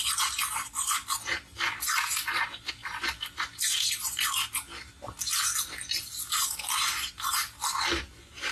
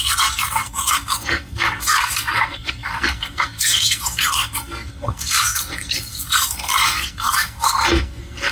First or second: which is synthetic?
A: second